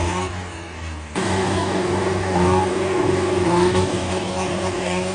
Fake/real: fake